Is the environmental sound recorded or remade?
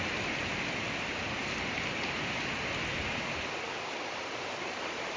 recorded